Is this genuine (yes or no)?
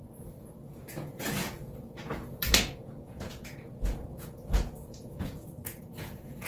no